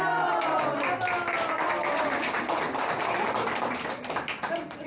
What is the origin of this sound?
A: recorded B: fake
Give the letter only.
A